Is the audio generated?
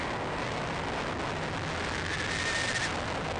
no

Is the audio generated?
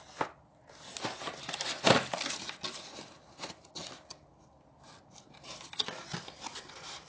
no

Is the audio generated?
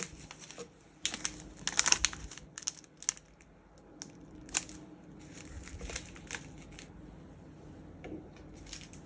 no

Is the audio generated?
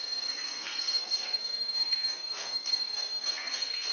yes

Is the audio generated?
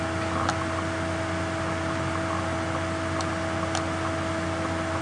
no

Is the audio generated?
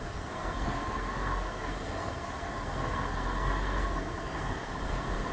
yes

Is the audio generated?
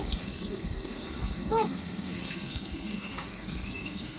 yes